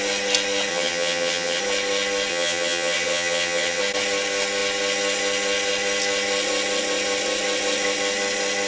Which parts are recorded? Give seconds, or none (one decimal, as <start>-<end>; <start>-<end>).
0.0-0.7; 1.6-2.3; 3.8-8.7